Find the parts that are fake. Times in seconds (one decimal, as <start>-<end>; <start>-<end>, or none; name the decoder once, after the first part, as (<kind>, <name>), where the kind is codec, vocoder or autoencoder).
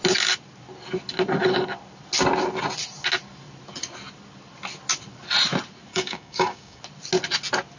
5.9-6.8 (codec, DAC)